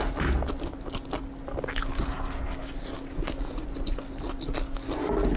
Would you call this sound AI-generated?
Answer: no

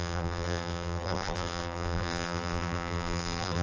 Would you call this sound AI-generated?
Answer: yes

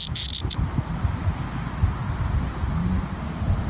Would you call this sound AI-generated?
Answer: no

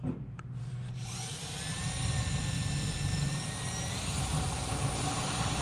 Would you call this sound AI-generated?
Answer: yes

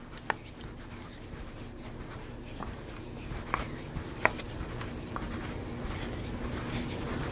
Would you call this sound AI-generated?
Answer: no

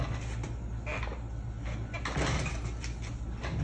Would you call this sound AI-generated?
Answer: no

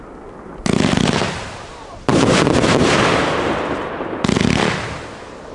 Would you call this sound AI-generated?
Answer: no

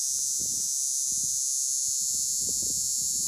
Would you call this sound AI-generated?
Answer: no